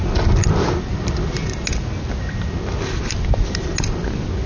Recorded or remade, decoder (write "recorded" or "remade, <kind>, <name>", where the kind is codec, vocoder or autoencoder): recorded